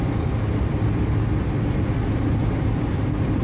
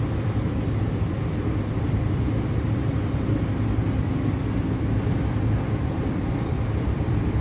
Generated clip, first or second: second